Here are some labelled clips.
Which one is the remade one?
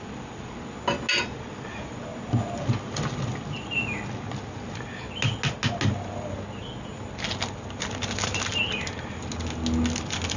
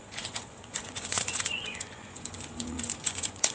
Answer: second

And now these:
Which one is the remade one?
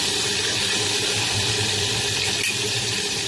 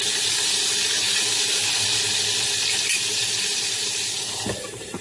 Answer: first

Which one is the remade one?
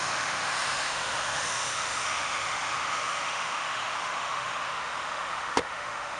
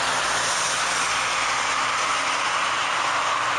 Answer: first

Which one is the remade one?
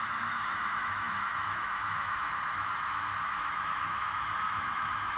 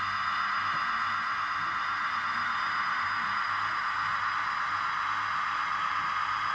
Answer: first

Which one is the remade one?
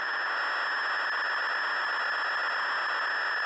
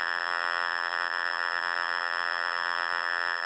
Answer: second